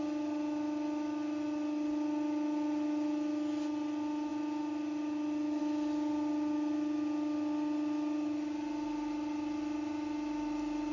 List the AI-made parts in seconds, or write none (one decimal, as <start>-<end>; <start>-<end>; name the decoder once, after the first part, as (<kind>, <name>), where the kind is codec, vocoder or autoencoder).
none